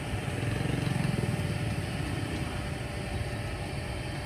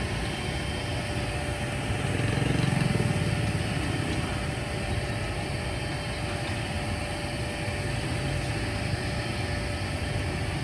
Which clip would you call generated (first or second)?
first